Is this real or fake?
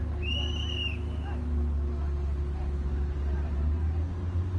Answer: real